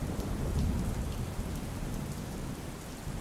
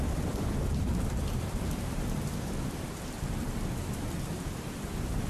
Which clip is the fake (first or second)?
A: second